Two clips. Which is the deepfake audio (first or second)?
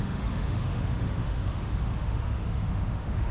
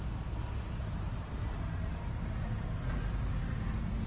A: first